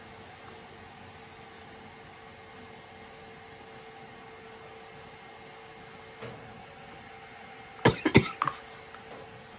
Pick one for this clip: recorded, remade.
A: recorded